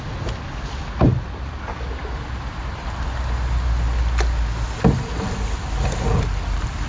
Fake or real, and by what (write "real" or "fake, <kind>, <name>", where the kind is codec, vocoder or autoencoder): real